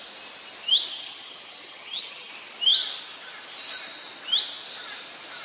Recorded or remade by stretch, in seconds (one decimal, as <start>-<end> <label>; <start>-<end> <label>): 0.0-0.9 recorded; 0.9-2.3 remade; 2.3-5.4 recorded